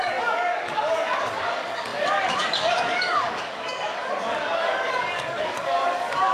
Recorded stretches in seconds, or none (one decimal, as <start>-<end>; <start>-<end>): none

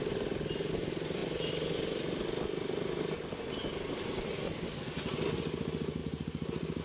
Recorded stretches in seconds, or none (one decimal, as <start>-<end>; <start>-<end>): 0.0-6.8

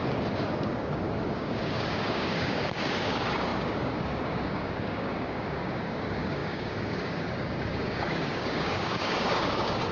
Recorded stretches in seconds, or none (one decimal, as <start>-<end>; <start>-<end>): none

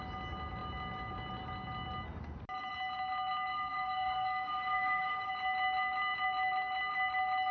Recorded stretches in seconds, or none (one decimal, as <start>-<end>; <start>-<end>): 0.0-3.5; 5.3-7.5